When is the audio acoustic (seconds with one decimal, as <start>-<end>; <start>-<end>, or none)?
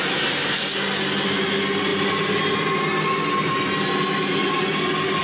0.0-5.2